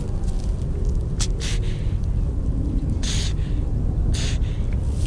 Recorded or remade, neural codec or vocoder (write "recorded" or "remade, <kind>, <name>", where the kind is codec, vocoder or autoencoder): recorded